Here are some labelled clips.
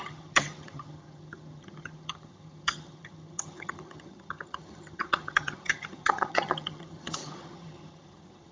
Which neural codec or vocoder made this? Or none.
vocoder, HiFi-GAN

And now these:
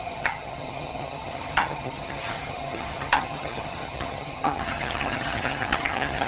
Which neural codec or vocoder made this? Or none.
vocoder, HiFi-GAN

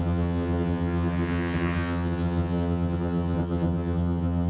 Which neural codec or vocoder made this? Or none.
vocoder, HiFi-GAN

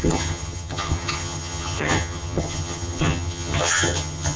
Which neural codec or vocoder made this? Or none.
vocoder, HiFi-GAN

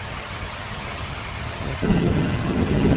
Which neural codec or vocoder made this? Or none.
vocoder, HiFi-GAN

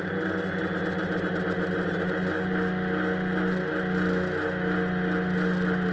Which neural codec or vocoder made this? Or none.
none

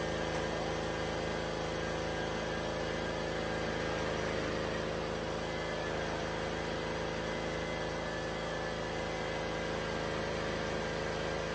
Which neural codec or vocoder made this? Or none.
none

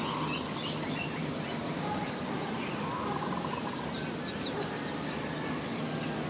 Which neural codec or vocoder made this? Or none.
none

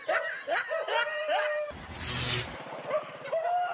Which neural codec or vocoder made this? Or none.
none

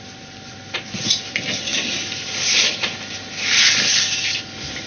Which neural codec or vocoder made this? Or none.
none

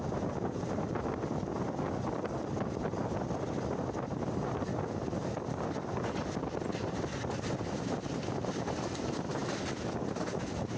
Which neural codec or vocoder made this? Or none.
none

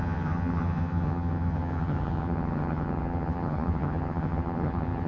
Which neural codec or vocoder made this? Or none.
vocoder, HiFi-GAN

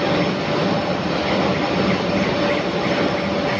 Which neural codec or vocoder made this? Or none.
none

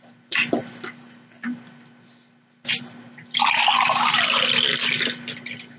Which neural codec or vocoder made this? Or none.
none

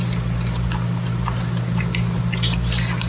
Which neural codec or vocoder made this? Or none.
none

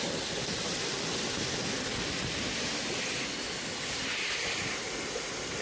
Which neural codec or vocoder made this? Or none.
none